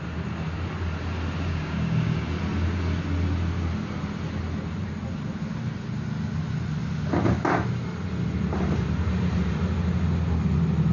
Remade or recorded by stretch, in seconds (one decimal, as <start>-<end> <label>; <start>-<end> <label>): 0.0-1.5 recorded; 1.5-2.3 remade; 2.3-10.9 recorded